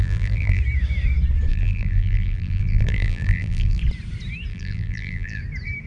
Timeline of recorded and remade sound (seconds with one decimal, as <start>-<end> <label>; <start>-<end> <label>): 0.0-0.6 remade; 0.6-1.5 recorded; 1.5-3.8 remade; 3.8-4.5 recorded; 4.5-5.4 remade; 5.4-5.9 recorded